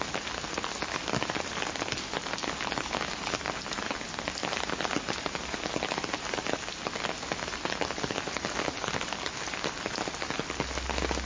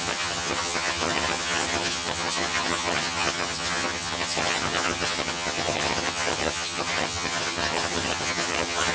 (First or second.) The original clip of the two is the first